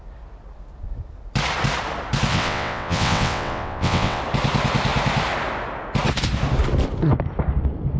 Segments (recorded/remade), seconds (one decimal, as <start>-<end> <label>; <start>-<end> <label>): 0.0-2.3 recorded; 2.3-4.2 remade; 4.2-8.0 recorded